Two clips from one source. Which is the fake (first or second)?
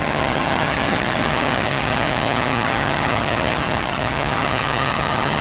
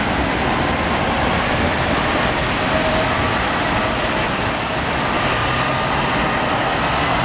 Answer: first